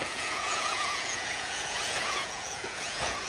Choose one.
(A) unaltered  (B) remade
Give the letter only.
B